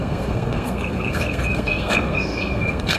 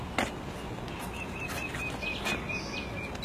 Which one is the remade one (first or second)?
first